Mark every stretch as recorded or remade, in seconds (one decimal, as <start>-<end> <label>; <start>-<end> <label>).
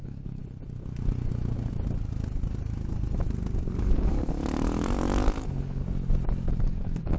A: 0.0-0.4 remade; 0.4-3.8 recorded; 3.8-5.8 remade; 5.8-6.6 recorded; 6.6-7.2 remade